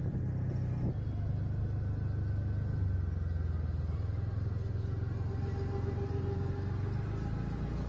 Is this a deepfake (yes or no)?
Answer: no